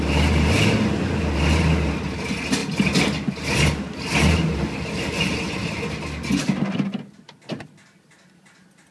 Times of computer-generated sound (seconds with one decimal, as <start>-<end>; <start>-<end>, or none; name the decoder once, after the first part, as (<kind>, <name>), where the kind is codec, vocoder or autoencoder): none